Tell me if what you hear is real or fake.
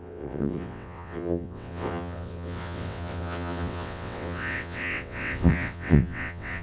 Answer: fake